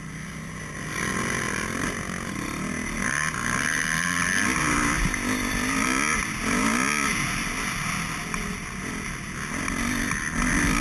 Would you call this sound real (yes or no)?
yes